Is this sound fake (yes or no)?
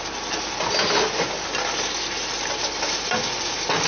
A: no